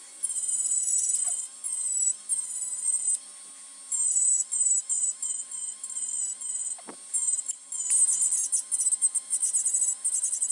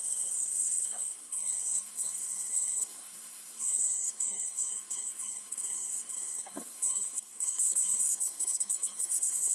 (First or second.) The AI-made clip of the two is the second